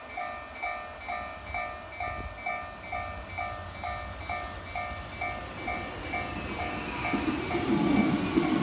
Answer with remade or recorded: recorded